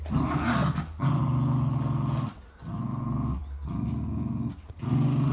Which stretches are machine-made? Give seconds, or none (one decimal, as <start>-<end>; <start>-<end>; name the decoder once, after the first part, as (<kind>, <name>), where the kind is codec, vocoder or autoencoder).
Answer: none